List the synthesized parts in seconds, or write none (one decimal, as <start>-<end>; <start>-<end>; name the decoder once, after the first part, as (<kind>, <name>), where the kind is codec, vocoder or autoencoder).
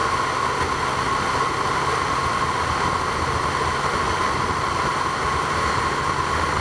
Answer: none